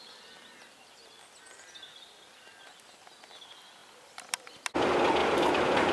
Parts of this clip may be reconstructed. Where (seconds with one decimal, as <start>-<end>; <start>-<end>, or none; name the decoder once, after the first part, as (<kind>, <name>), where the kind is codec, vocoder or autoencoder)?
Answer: 3.8-4.4 (vocoder, BigVGAN v2); 5.2-5.9